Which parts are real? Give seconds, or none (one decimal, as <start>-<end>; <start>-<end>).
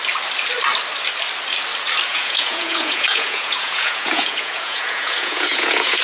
0.0-2.1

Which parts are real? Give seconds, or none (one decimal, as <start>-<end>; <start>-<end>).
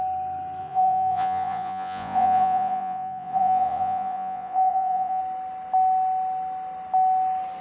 0.0-0.6; 5.2-7.6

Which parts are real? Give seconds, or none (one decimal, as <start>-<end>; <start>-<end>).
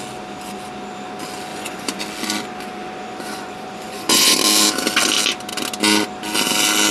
0.0-1.5; 2.0-2.8; 4.4-6.9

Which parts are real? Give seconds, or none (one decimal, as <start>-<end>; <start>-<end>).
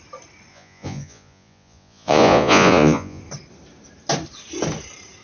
0.0-0.5; 3.2-5.2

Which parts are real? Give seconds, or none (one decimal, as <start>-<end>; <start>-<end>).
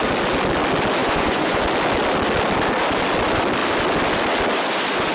0.0-1.0; 1.6-5.1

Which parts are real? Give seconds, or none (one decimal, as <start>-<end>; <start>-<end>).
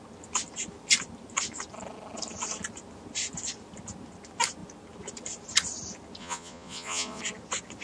0.0-6.2; 7.2-7.8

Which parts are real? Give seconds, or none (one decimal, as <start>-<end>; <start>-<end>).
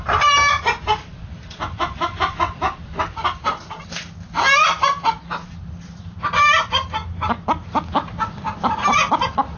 0.0-9.6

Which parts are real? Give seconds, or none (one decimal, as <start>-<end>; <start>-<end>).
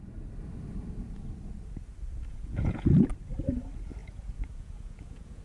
0.0-2.3; 3.1-4.0